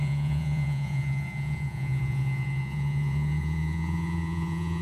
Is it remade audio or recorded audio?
remade